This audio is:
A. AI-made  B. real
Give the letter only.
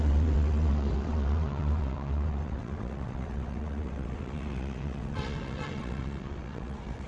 A